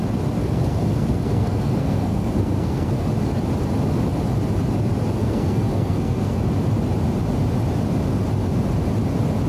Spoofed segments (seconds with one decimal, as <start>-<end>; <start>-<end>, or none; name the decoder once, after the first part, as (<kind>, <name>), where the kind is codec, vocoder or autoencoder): 0.4-3.1 (codec, SNAC); 5.2-6.4